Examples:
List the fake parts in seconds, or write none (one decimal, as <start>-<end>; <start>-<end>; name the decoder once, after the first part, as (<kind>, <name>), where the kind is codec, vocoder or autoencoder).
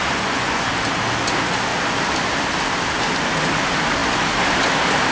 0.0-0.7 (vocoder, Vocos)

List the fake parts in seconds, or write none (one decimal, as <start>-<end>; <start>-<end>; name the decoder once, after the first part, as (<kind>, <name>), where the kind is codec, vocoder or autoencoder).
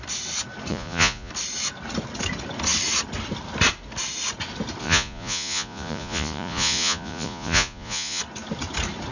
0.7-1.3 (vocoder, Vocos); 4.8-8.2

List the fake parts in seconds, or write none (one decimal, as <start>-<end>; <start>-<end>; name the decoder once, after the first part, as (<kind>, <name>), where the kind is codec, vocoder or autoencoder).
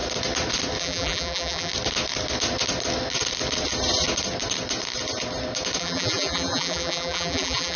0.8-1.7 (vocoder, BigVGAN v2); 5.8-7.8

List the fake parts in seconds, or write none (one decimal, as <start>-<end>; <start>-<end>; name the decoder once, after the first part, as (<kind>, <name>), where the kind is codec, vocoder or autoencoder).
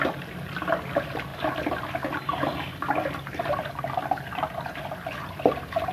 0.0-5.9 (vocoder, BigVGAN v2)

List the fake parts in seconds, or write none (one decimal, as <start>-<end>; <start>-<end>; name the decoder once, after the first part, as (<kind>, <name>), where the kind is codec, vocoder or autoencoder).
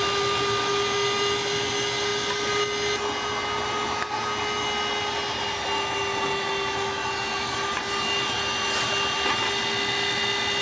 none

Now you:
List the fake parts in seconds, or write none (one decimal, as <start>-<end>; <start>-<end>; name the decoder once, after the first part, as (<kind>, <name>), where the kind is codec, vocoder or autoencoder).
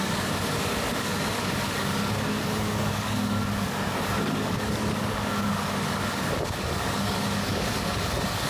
0.0-8.5 (codec, DAC)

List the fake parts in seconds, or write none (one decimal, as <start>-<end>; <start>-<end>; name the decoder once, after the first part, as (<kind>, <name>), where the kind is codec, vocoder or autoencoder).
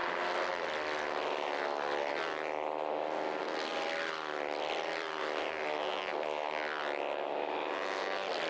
3.7-5.2 (vocoder, BigVGAN v2)